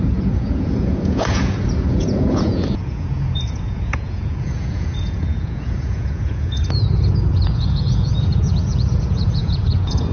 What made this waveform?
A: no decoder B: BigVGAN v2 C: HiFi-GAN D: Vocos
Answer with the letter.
D